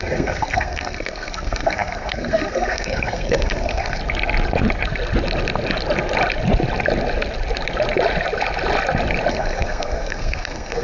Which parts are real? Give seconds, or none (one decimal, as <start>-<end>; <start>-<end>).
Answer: 4.0-9.3